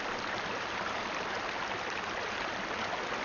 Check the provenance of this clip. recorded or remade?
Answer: recorded